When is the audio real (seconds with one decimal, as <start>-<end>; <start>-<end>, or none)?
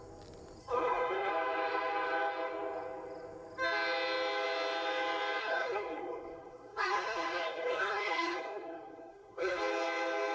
0.0-0.6; 1.3-5.4; 9.6-10.3